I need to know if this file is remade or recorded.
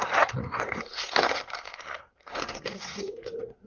remade